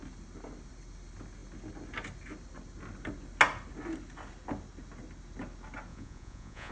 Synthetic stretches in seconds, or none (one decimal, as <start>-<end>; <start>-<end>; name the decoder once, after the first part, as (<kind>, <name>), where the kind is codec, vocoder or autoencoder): 5.9-6.7 (vocoder, Vocos)